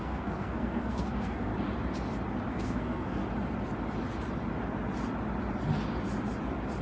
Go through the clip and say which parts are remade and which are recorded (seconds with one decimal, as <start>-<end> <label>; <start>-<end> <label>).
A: 0.0-1.5 remade; 1.5-2.5 recorded; 2.5-3.2 remade; 3.2-6.8 recorded